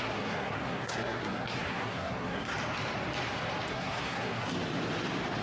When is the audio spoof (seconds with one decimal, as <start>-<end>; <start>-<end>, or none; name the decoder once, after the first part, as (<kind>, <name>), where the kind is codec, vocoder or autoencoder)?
0.0-2.5 (codec, SNAC); 3.7-4.5